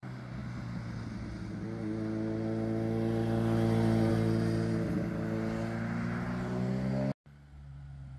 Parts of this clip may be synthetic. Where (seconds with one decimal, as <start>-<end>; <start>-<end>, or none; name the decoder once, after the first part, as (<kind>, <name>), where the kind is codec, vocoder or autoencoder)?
none